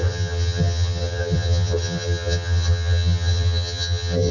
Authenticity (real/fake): fake